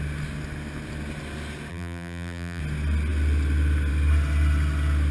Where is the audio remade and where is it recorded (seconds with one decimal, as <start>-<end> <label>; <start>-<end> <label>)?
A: 0.0-1.7 recorded; 1.7-2.6 remade; 2.6-5.1 recorded